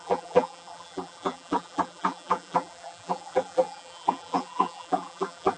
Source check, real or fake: fake